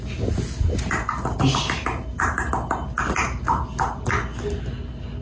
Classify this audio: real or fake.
real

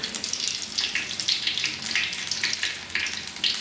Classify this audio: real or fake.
real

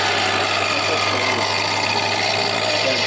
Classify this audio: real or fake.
real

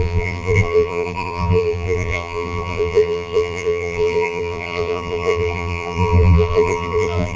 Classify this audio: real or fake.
fake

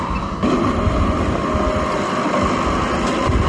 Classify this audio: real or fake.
real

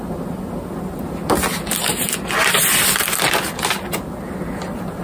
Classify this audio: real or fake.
real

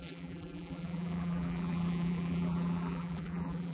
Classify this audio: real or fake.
fake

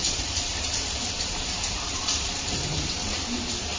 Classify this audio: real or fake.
fake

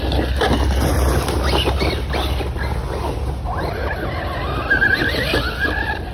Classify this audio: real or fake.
real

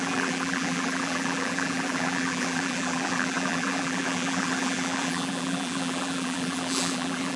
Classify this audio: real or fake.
fake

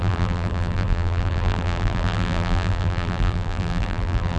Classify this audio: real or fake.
fake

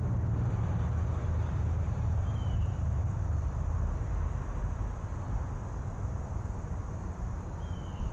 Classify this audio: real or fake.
fake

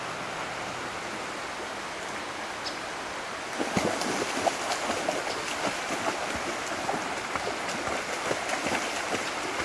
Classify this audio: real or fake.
real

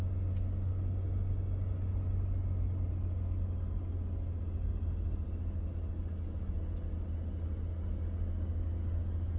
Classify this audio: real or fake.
real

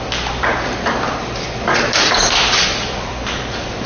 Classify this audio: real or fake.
fake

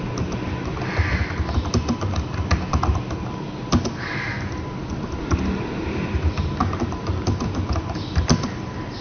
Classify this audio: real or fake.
real